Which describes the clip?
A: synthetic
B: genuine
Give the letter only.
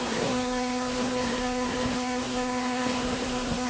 A